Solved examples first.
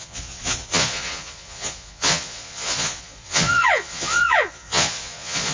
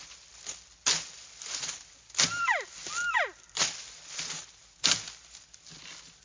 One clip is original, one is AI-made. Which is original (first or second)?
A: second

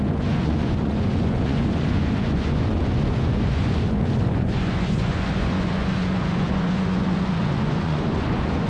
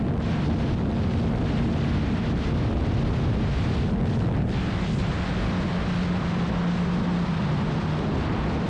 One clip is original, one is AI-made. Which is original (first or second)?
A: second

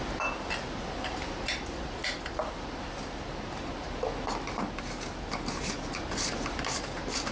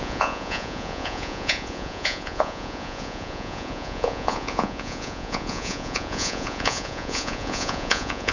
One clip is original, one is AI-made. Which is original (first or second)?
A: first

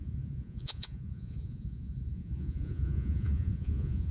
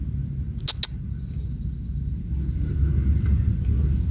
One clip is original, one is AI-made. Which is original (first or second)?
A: second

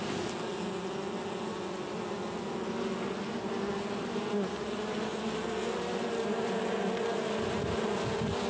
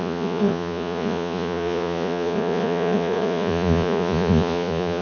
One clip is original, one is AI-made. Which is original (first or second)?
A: first